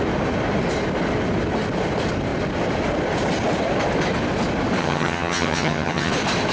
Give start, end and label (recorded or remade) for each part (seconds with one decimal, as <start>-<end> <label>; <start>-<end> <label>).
0.0-4.8 recorded; 4.8-6.1 remade; 6.1-6.5 recorded